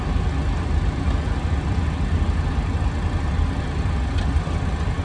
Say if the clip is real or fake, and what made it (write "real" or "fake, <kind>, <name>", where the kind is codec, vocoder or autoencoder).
real